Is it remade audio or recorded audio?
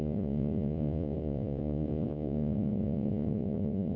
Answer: remade